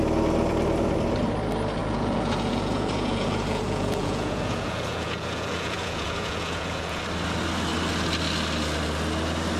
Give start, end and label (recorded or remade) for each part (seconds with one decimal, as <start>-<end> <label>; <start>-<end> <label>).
0.0-1.8 recorded; 1.8-7.0 remade; 7.0-9.6 recorded